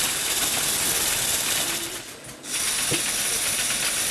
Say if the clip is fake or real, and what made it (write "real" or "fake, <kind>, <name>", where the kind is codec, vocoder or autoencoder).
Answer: real